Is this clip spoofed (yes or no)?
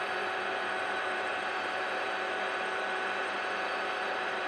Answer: yes